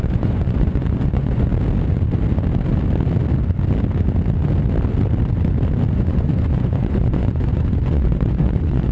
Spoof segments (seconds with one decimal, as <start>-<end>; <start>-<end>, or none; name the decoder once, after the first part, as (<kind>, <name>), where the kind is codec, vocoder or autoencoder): 0.0-1.5 (vocoder, Vocos); 5.9-8.9